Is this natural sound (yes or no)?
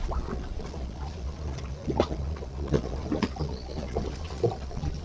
no